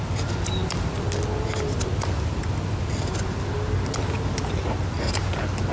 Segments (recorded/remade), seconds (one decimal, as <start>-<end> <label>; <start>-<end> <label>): 0.0-5.7 recorded